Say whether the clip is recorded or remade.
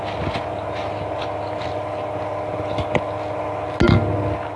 recorded